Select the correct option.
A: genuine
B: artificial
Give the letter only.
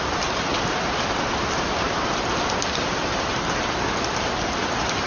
A